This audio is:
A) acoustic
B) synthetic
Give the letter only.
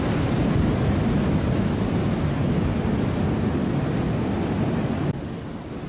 A